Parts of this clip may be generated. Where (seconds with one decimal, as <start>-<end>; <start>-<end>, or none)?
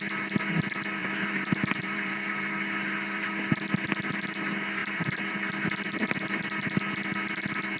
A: 1.0-3.3; 4.8-5.5